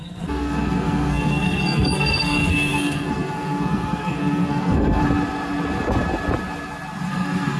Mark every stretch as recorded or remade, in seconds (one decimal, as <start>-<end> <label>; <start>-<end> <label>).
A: 0.0-5.0 remade; 5.0-7.1 recorded; 7.1-7.6 remade